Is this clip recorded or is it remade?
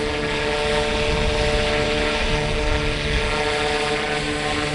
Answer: recorded